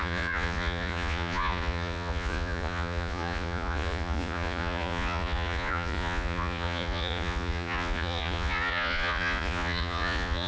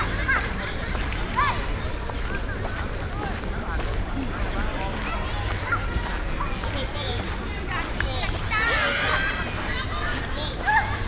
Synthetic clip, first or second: first